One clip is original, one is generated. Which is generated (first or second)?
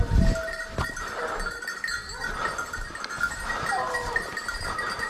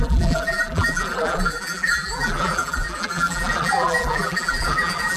second